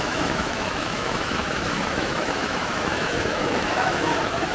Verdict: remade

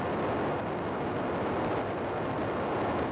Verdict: recorded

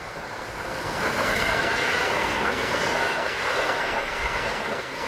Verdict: remade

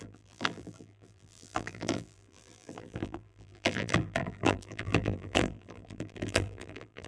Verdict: remade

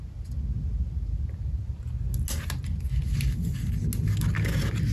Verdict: recorded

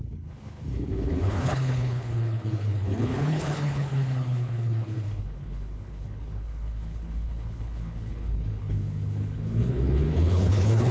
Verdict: remade